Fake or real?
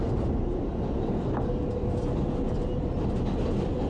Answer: real